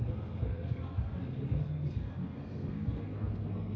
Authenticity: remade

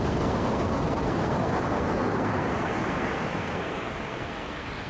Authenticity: remade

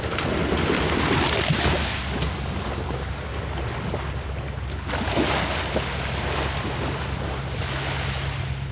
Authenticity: recorded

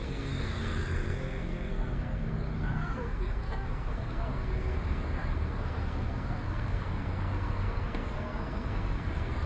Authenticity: remade